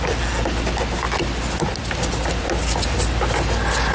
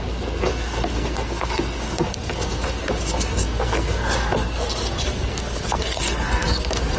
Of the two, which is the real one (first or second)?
first